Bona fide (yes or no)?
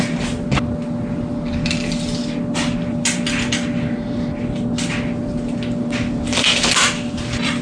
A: yes